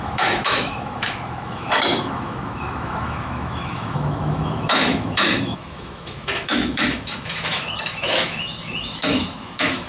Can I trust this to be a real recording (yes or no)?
no